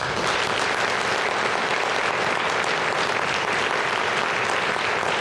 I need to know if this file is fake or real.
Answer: real